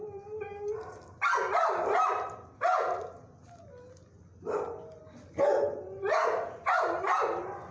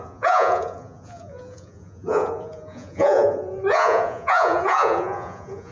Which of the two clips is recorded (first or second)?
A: first